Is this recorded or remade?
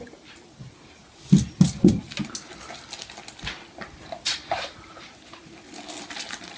recorded